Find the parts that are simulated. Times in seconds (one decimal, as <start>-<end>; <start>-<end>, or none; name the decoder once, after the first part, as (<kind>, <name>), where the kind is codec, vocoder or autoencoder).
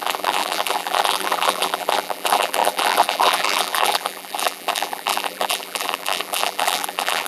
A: 0.0-7.3 (vocoder, BigVGAN v2)